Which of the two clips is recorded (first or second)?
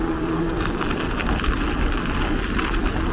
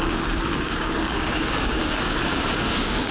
first